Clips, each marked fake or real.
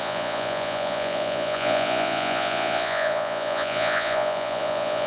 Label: fake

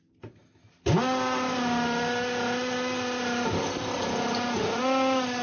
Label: real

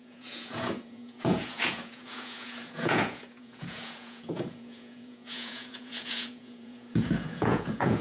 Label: fake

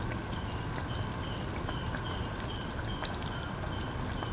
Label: real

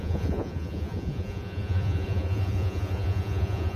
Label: fake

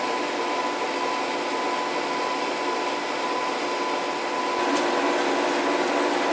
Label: real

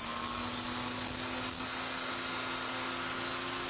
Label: real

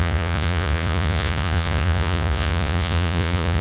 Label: fake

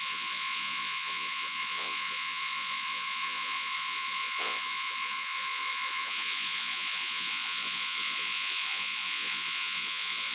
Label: fake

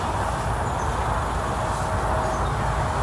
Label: real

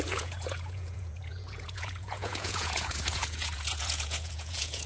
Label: fake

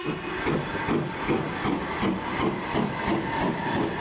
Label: real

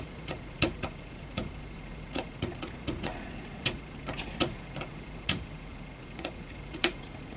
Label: fake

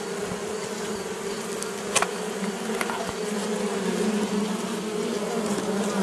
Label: real